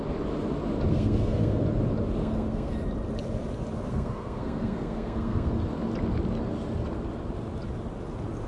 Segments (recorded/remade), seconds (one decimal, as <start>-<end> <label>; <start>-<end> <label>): 0.0-0.9 recorded; 0.9-1.6 remade; 1.6-2.2 recorded; 2.2-2.7 remade; 2.7-3.9 recorded; 3.9-5.5 remade; 5.5-8.5 recorded